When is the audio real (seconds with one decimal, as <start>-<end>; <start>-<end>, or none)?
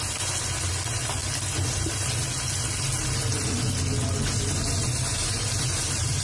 0.0-5.1